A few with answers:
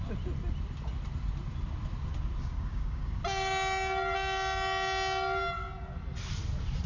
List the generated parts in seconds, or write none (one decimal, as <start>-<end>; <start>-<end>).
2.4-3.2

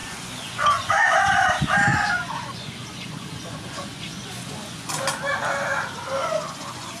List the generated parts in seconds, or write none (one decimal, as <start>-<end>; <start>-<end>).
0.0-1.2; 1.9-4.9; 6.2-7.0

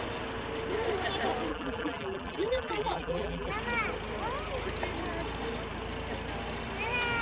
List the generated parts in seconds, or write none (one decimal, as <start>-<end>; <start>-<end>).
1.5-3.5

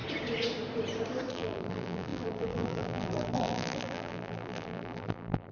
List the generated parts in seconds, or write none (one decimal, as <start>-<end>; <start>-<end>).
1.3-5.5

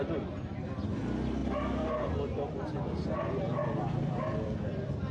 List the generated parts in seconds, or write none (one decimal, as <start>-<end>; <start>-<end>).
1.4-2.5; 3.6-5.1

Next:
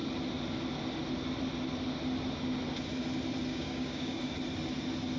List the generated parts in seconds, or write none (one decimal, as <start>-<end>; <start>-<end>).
3.5-4.2

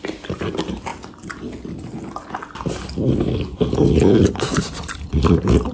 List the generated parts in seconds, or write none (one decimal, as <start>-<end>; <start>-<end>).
0.0-0.9; 4.3-5.7